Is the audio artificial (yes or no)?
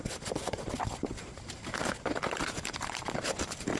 yes